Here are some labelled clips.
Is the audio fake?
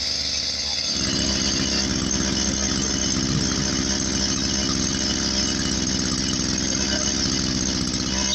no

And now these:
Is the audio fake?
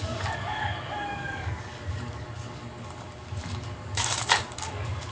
yes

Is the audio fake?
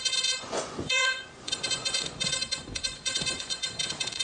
yes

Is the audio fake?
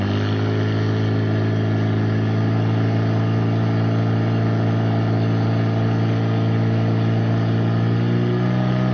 no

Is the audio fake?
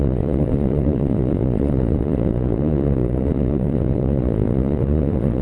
yes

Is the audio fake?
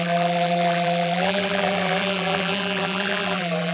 yes